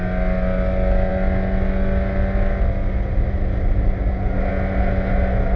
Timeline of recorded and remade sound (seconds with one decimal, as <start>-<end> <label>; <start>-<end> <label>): 0.0-5.6 recorded

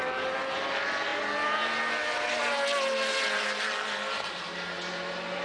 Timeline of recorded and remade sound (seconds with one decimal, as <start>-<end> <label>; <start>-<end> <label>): 0.0-5.4 recorded

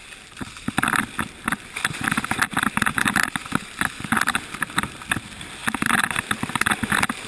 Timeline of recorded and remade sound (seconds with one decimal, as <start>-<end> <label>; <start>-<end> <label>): 0.0-5.6 recorded; 5.6-6.2 remade; 6.2-7.3 recorded